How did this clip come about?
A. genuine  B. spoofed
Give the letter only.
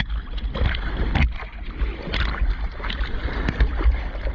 A